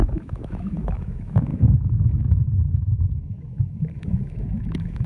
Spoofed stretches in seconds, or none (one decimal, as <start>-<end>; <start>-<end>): 0.0-5.1